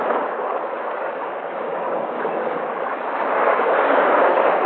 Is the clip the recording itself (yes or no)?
no